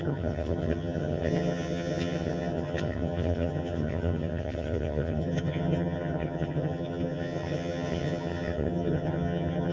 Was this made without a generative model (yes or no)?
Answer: no